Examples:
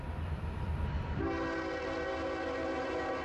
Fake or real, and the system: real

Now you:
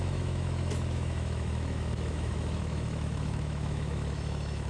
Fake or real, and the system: fake, autoencoder, DAC-VAE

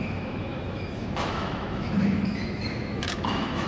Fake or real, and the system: fake, autoencoder, DAC-VAE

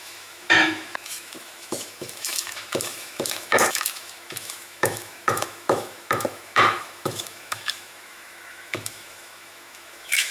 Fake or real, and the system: fake, autoencoder, DAC-VAE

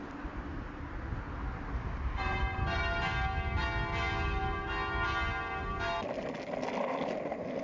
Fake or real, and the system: real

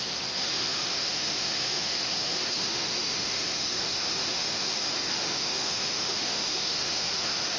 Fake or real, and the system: fake, autoencoder, DAC-VAE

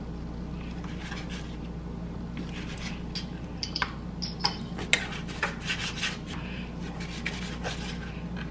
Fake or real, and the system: real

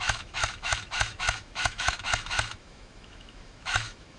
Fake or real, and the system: fake, autoencoder, DAC-VAE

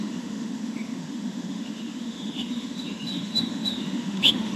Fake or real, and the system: fake, autoencoder, DAC-VAE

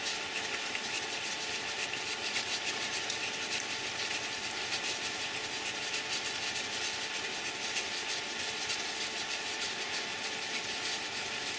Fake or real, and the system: real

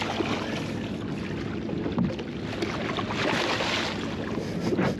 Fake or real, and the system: real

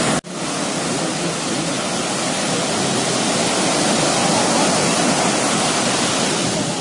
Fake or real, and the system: real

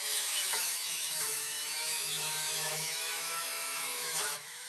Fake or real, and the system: fake, autoencoder, DAC-VAE